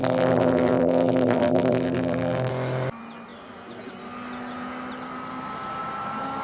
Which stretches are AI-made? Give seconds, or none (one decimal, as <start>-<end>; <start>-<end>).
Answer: 0.0-2.5